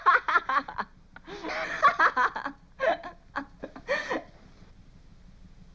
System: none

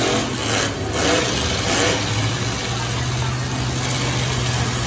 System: none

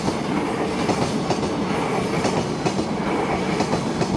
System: none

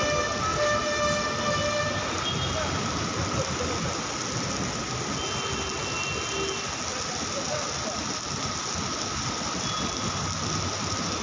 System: none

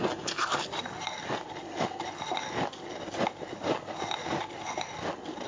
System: none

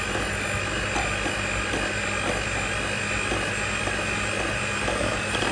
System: none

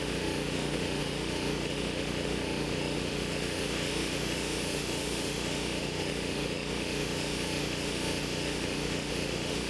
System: autoencoder, DAC-VAE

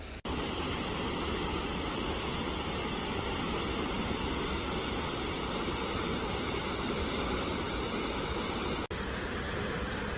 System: none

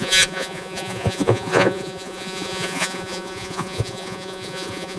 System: vocoder, Vocos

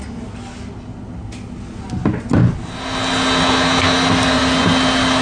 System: none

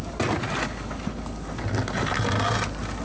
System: none